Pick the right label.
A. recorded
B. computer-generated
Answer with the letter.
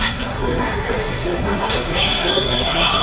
B